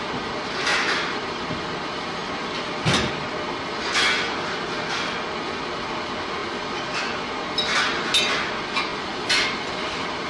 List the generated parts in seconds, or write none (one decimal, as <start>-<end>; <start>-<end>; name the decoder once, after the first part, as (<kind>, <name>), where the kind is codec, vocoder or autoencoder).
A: 0.7-1.4 (vocoder, BigVGAN v2); 2.2-3.3; 8.9-10.3